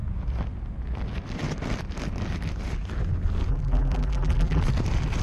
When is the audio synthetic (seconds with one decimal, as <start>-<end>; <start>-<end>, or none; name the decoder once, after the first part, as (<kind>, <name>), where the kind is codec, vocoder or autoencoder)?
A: 3.5-4.6 (vocoder, BigVGAN v2)